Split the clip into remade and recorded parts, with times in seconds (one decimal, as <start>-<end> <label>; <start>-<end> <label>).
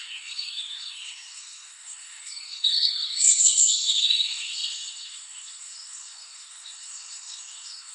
0.0-7.9 remade